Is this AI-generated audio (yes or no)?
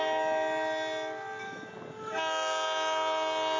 no